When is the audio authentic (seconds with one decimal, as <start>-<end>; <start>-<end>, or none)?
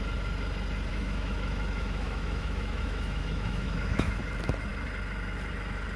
0.0-0.9; 4.2-6.0